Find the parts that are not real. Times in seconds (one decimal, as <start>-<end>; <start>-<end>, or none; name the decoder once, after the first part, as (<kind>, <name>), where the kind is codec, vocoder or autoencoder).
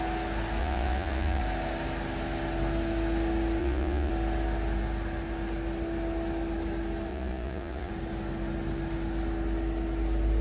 0.6-1.4 (vocoder, Vocos); 3.6-4.1; 7.1-7.9